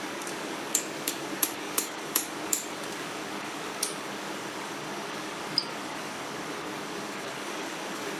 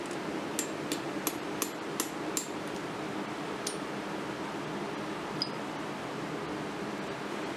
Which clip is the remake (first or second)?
first